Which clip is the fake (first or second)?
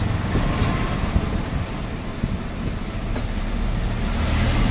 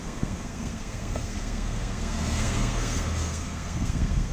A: second